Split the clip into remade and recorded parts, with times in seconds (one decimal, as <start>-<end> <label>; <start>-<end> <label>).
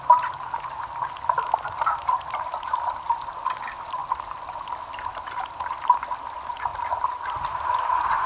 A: 0.0-4.0 remade; 4.0-6.0 recorded; 6.0-6.7 remade; 6.7-7.6 recorded; 7.6-8.3 remade